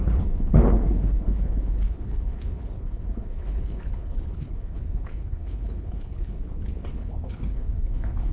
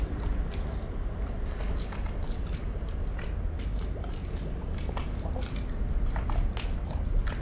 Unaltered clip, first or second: second